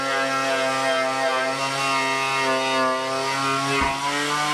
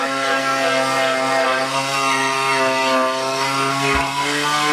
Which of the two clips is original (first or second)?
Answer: first